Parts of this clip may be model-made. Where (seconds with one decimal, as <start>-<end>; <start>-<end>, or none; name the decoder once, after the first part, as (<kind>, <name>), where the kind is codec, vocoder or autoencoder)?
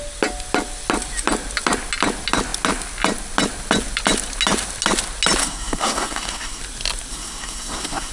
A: 5.4-6.6 (codec, SNAC); 7.1-8.1